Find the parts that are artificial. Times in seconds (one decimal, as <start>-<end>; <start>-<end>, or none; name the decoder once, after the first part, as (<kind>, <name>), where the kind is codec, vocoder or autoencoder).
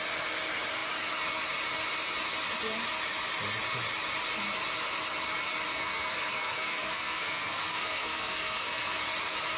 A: 5.7-9.0 (codec, SNAC)